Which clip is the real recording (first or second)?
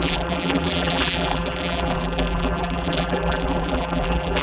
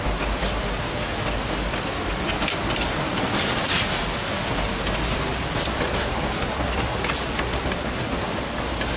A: second